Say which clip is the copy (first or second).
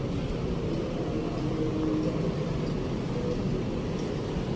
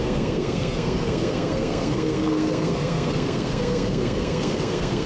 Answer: second